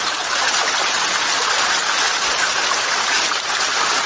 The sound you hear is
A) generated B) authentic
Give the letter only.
B